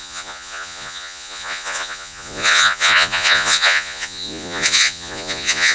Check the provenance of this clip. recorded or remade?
remade